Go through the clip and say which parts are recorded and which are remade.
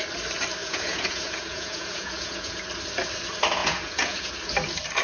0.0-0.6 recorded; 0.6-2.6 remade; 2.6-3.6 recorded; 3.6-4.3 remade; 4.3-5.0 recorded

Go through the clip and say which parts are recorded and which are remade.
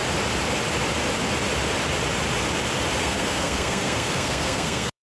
0.0-3.0 recorded; 3.0-5.0 remade